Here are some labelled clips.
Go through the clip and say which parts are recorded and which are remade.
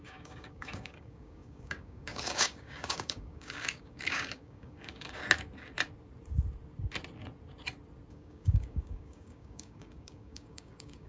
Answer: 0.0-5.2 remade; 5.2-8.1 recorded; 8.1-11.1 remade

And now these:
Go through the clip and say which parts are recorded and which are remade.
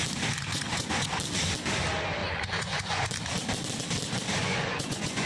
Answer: 0.0-0.5 recorded; 0.5-1.1 remade; 1.1-2.2 recorded; 2.2-3.0 remade; 3.0-4.4 recorded; 4.4-5.3 remade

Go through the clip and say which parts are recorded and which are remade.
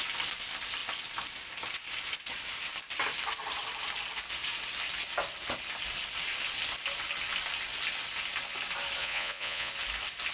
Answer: 0.0-9.0 recorded; 9.0-9.7 remade; 9.7-10.3 recorded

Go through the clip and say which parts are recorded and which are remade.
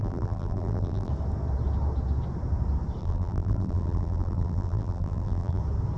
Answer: 0.0-1.1 remade; 1.1-3.0 recorded; 3.0-5.6 remade; 5.6-6.0 recorded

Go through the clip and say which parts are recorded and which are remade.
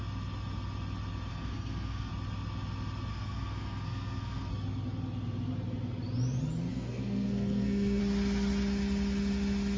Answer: 0.0-1.3 recorded; 1.3-2.1 remade; 2.1-3.1 recorded; 3.1-4.5 remade; 4.5-6.7 recorded; 6.7-8.0 remade; 8.0-9.8 recorded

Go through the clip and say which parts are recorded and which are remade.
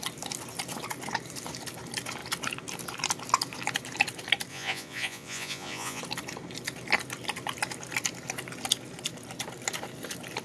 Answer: 0.0-4.5 recorded; 4.5-6.0 remade; 6.0-10.4 recorded